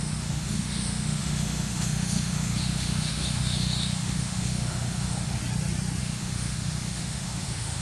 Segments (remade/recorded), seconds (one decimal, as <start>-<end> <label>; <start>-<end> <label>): 0.0-5.4 remade; 5.4-6.0 recorded; 6.0-7.8 remade